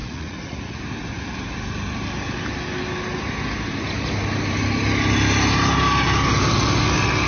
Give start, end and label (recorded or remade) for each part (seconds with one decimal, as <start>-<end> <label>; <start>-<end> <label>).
0.0-0.8 remade; 0.8-7.3 recorded